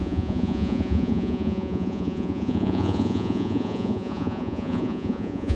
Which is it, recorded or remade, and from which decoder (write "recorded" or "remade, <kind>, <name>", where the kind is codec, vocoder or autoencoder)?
remade, vocoder, Vocos